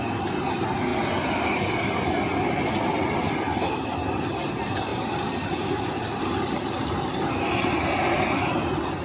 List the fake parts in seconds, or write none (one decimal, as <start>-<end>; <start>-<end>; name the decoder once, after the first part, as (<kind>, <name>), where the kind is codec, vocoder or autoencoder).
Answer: none